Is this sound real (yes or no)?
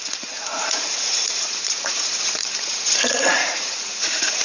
no